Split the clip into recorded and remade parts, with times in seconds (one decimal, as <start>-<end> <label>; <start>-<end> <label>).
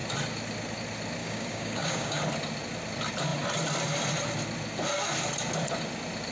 0.0-1.2 recorded; 1.2-2.2 remade; 2.2-6.3 recorded